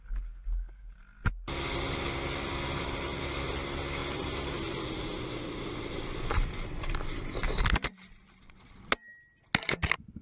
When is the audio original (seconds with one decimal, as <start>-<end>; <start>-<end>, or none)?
0.0-10.2